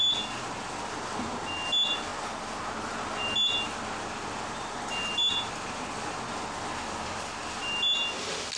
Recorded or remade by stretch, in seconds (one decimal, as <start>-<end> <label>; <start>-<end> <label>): 0.0-8.6 recorded